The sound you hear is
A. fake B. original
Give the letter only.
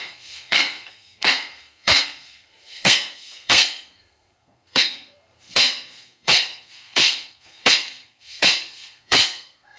A